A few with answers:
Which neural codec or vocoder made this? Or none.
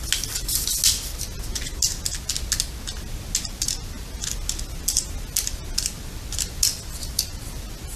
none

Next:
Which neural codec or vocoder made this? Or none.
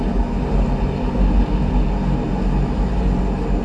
none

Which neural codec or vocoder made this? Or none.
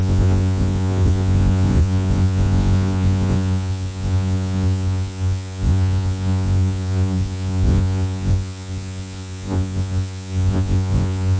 vocoder, Vocos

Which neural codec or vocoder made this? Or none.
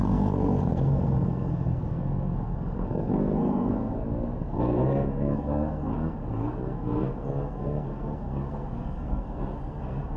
codec, SNAC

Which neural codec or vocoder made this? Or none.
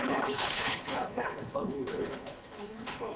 codec, HILCodec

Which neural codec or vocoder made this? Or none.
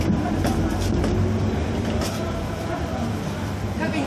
none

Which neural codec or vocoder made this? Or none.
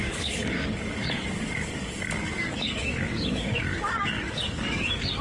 codec, DAC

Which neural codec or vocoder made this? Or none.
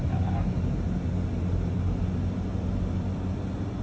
none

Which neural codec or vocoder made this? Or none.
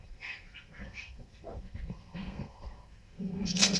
codec, SNAC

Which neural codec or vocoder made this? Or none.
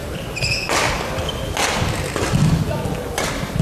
none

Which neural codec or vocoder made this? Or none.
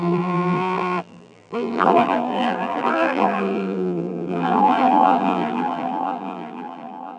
vocoder, BigVGAN v2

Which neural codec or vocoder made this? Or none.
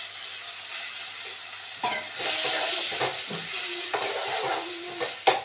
none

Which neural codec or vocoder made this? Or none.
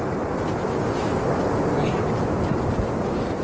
none